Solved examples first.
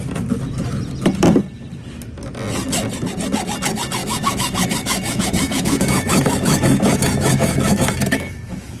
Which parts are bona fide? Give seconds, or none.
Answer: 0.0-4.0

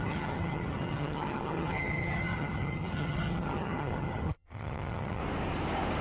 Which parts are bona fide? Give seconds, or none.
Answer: 5.2-6.0

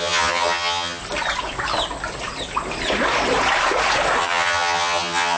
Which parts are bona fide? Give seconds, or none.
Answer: 1.0-4.2

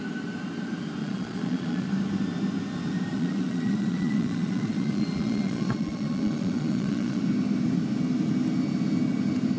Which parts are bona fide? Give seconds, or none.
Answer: 0.0-1.0; 1.9-3.1; 7.2-9.6

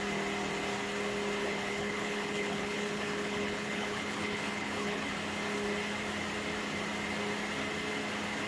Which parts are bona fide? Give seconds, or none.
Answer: 0.0-1.4; 5.1-8.5